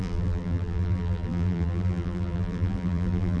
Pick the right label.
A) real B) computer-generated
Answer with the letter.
B